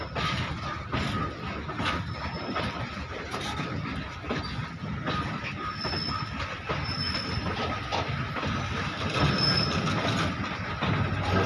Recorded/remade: recorded